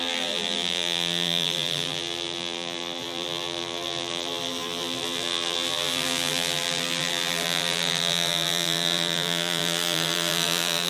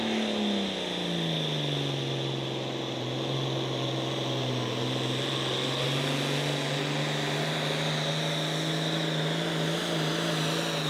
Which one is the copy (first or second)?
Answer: first